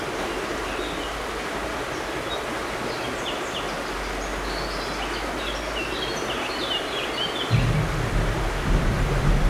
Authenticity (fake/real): real